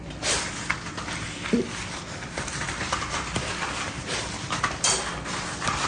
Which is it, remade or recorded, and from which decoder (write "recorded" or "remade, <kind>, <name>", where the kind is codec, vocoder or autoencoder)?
recorded